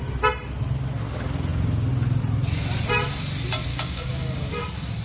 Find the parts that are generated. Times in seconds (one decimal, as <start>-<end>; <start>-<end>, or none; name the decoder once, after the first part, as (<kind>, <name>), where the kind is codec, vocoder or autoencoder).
3.7-4.5 (codec, DAC)